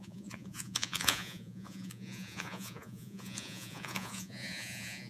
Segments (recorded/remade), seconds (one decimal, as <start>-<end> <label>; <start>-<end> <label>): 0.0-5.1 remade